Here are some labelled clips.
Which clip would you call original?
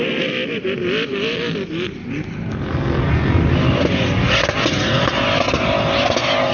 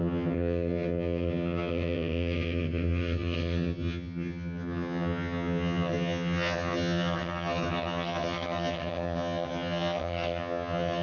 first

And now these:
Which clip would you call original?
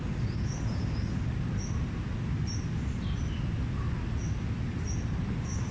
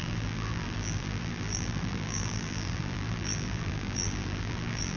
first